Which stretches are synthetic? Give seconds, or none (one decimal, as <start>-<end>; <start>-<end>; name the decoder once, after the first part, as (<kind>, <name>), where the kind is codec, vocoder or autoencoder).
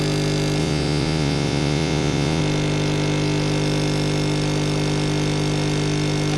0.6-2.4 (vocoder, Vocos)